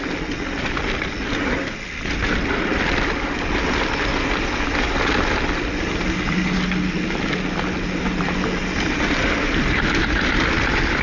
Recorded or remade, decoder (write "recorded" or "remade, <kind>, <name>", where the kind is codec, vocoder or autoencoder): recorded